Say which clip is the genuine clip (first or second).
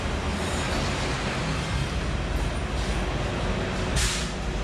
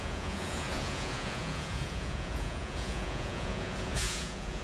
first